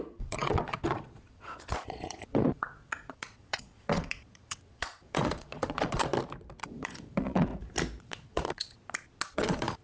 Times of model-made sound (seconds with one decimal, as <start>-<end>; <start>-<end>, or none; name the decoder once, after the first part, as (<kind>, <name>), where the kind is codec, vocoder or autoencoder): 0.0-6.1 (vocoder, Vocos); 6.6-7.5; 8.0-8.8; 9.3-9.8